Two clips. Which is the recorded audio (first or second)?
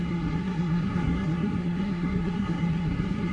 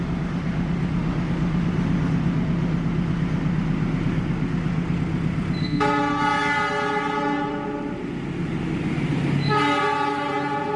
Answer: second